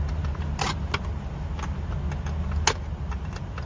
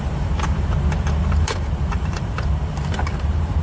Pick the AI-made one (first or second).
second